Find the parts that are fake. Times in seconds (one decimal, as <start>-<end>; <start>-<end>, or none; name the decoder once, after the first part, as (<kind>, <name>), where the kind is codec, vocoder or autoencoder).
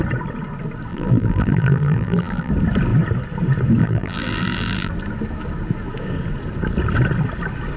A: 0.9-2.5 (vocoder, BigVGAN v2); 3.8-4.9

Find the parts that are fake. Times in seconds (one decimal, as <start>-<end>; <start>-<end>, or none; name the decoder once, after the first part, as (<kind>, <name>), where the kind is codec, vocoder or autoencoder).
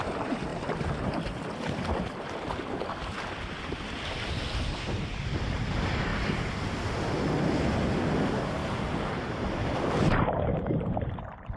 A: 8.6-11.2 (vocoder, BigVGAN v2)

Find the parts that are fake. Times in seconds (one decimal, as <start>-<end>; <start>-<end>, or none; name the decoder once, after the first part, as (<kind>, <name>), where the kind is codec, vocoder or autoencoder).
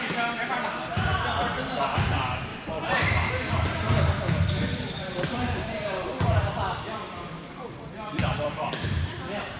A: 2.5-3.5 (vocoder, BigVGAN v2); 4.7-8.7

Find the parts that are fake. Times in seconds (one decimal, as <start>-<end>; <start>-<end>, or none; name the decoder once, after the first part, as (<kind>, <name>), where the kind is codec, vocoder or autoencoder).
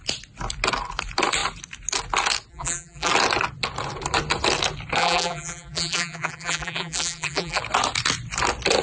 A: 2.5-3.1 (vocoder, BigVGAN v2); 5.0-7.6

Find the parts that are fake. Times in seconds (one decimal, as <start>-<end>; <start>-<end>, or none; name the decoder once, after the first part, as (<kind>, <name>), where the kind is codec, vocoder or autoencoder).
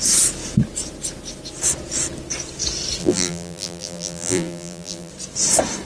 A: 3.0-5.1 (vocoder, BigVGAN v2)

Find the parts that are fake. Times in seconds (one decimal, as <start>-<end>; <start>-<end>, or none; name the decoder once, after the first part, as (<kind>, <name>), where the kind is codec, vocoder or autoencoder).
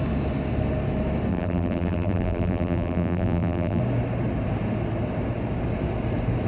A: 1.3-3.8 (vocoder, BigVGAN v2)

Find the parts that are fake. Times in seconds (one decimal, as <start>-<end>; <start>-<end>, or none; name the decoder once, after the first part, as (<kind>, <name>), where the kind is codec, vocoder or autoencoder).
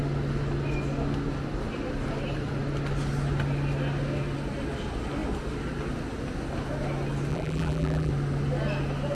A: 7.3-8.1 (vocoder, BigVGAN v2)